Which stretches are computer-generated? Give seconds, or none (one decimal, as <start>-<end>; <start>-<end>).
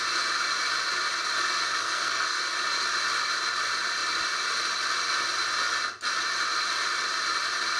1.8-2.4